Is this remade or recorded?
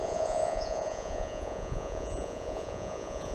remade